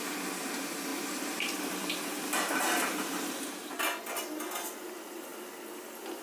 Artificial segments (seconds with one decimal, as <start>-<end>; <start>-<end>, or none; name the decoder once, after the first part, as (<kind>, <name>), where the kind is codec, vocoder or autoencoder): 0.9-3.8 (vocoder, BigVGAN v2)